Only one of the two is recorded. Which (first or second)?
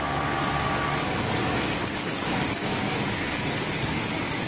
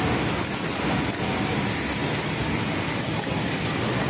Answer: second